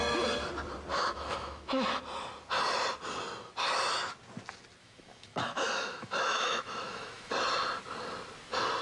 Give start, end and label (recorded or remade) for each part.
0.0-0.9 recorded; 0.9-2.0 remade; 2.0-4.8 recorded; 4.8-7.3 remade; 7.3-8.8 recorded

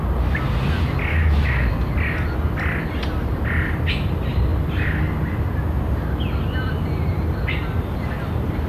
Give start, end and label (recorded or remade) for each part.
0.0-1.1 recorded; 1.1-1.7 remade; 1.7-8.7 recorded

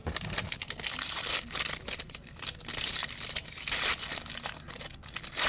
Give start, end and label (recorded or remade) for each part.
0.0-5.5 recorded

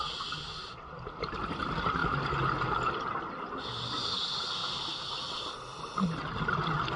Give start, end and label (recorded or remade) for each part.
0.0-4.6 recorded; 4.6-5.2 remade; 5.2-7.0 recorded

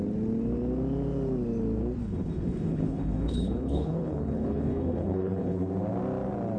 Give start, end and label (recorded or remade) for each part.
0.0-2.0 recorded; 2.0-5.7 remade; 5.7-6.6 recorded

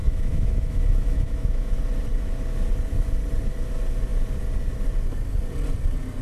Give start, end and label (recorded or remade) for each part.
0.0-1.8 remade; 1.8-6.2 recorded

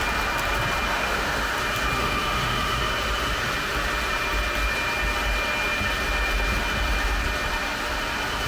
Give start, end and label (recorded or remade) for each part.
0.0-0.9 recorded; 0.9-1.5 remade; 1.5-2.0 recorded; 2.0-2.9 remade; 2.9-8.5 recorded